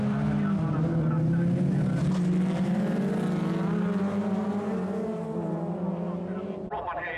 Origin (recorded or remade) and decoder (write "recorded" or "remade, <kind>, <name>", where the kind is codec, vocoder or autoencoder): recorded